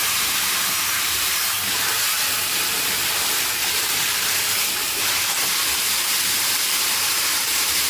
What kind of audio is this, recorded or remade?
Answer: remade